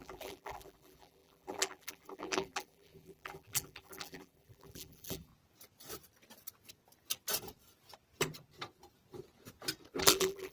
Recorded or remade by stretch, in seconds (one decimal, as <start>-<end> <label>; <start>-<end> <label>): 0.0-5.3 remade; 5.3-10.0 recorded; 10.0-10.5 remade